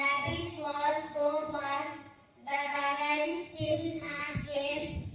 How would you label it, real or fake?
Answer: fake